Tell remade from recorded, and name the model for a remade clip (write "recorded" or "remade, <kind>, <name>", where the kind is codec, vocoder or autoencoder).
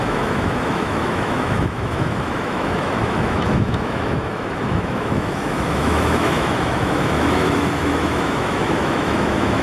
remade, autoencoder, DAC-VAE